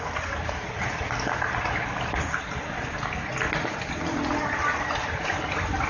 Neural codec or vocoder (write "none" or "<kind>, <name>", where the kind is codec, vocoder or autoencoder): none